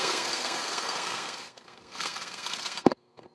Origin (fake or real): fake